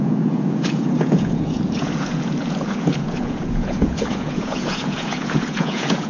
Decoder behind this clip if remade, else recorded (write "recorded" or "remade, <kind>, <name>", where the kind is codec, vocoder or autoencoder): remade, vocoder, Vocos